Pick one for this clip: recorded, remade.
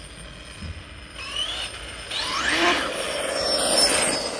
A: recorded